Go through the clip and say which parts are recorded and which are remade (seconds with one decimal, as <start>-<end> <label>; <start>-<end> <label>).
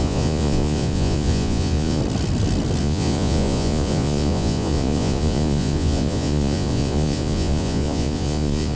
0.0-2.0 remade; 2.0-2.8 recorded; 2.8-8.8 remade